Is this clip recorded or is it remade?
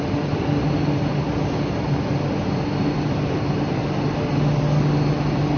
recorded